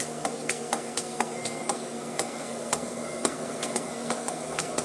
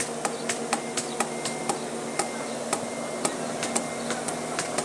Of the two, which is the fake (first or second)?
first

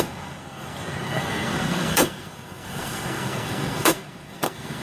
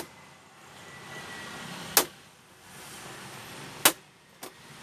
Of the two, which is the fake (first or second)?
first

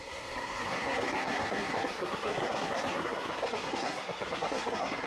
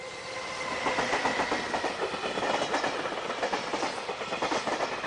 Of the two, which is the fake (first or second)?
first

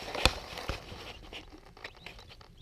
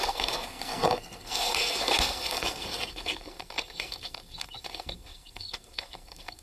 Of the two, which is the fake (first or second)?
second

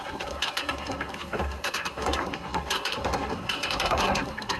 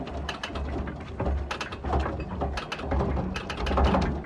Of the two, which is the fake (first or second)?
first